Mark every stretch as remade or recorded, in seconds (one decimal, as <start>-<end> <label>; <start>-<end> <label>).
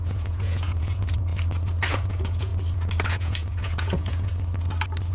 0.0-1.3 remade; 1.3-1.9 recorded; 1.9-2.5 remade; 2.5-3.1 recorded; 3.1-4.3 remade; 4.3-5.1 recorded